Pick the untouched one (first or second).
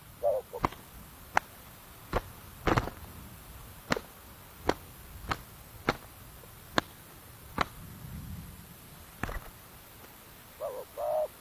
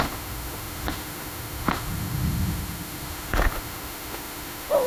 first